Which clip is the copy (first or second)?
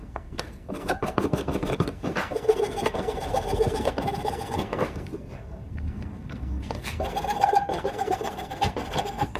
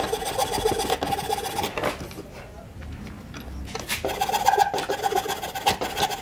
first